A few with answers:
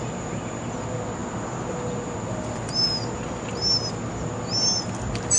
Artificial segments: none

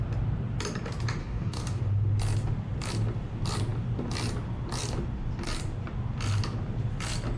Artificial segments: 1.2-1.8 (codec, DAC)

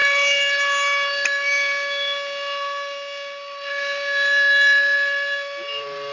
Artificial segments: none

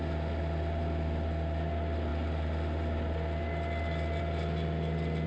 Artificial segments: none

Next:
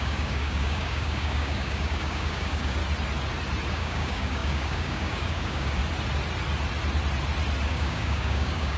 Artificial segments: 0.0-2.8 (codec, DAC); 3.7-5.8; 7.7-8.8